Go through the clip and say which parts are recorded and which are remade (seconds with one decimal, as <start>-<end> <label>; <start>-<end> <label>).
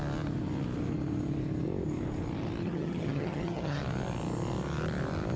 0.0-2.6 recorded; 2.6-3.8 remade; 3.8-5.4 recorded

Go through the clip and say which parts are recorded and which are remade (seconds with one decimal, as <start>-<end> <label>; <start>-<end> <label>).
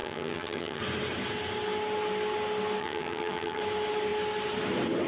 0.0-0.8 remade; 0.8-2.8 recorded; 2.8-3.6 remade; 3.6-5.1 recorded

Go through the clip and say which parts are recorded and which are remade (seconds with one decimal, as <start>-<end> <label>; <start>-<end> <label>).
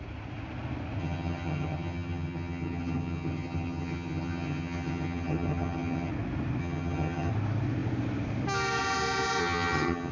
0.0-1.0 recorded; 1.0-6.1 remade; 6.1-6.6 recorded; 6.6-7.3 remade; 7.3-9.4 recorded; 9.4-10.1 remade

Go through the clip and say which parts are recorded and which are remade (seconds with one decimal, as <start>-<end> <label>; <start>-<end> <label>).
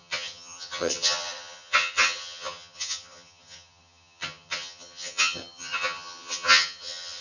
0.0-7.2 remade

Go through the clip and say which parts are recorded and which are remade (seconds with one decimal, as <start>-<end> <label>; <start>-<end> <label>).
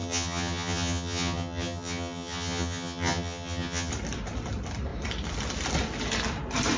0.0-3.9 remade; 3.9-6.8 recorded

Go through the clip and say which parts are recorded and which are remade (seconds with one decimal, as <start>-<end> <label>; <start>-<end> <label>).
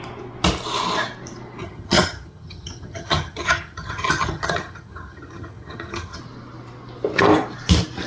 0.0-1.6 recorded; 1.6-6.2 remade; 6.2-8.1 recorded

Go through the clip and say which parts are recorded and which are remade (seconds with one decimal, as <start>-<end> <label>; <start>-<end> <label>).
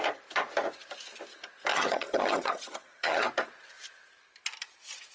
0.0-1.7 recorded; 1.7-3.3 remade; 3.3-5.1 recorded